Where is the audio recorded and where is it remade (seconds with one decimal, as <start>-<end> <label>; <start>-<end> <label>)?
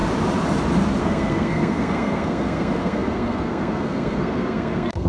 0.0-1.0 recorded; 1.0-5.1 remade